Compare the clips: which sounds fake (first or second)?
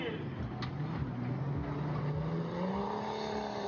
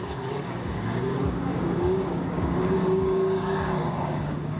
second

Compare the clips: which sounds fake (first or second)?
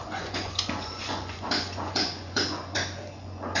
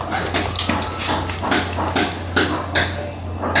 first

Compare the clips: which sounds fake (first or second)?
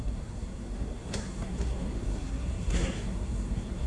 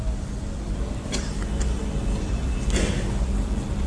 first